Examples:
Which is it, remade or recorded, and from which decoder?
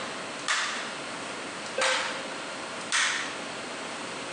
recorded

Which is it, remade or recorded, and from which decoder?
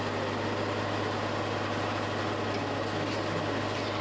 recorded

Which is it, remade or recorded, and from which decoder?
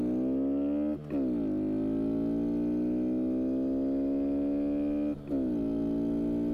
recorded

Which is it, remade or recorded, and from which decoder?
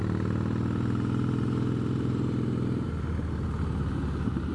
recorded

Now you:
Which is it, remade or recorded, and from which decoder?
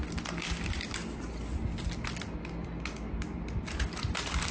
recorded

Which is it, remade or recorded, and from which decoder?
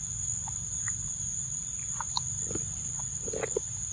recorded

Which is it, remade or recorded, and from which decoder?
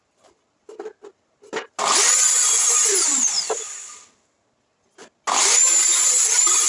recorded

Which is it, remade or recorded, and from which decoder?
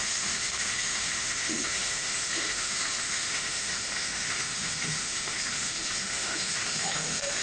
remade, autoencoder, DAC-VAE